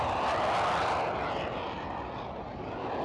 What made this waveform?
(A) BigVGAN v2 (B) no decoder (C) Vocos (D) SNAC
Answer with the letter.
B